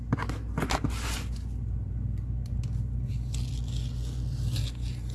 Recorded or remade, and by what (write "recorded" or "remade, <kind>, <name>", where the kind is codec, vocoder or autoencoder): recorded